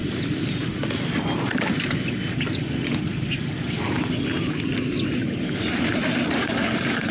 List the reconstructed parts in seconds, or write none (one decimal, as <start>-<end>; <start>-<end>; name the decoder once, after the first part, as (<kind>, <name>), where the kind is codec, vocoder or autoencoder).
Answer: 6.4-7.1 (codec, DAC)